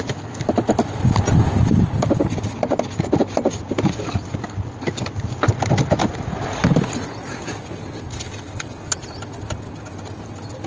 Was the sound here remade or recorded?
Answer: recorded